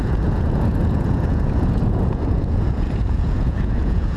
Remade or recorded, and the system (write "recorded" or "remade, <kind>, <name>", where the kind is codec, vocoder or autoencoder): remade, vocoder, Vocos